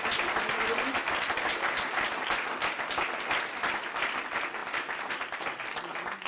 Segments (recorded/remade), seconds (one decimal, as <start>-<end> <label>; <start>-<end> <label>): 0.0-6.3 recorded